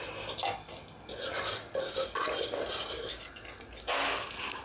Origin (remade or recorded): recorded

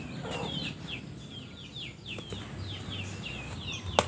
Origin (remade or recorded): recorded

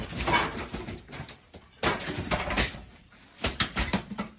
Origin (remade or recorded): remade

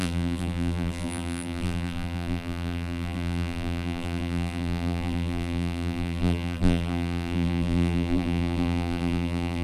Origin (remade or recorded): remade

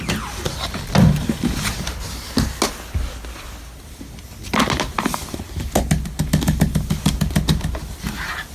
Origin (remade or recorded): recorded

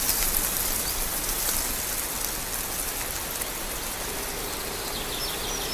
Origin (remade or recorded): recorded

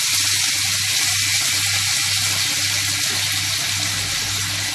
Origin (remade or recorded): recorded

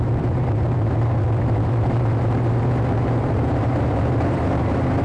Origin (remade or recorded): remade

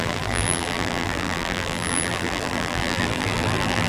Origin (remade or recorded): remade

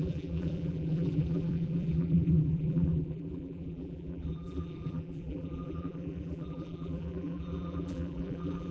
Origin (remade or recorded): remade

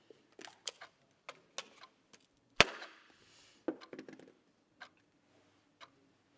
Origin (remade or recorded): recorded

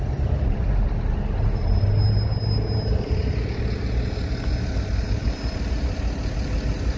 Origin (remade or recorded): recorded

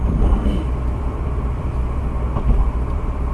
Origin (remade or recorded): remade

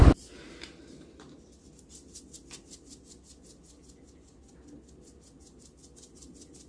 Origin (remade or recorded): recorded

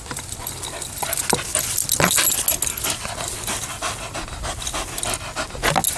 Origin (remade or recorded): recorded